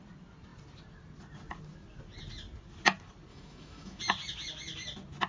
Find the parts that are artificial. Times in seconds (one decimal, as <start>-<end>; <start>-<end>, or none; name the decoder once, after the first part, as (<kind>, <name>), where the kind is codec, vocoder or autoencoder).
3.3-4.0 (autoencoder, DAC-VAE)